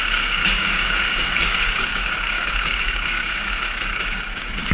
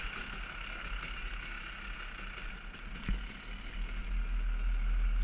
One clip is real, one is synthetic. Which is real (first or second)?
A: second